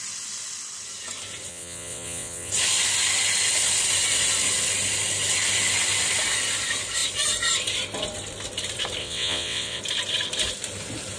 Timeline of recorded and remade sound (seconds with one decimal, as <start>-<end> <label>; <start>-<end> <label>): 0.0-1.5 recorded; 1.5-2.5 remade; 2.5-9.0 recorded; 9.0-9.8 remade; 9.8-11.2 recorded